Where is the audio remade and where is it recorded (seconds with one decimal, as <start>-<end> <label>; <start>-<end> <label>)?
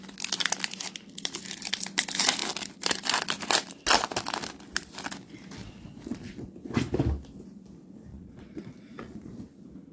0.0-5.6 recorded; 5.6-6.4 remade; 6.4-8.1 recorded; 8.1-9.4 remade; 9.4-9.9 recorded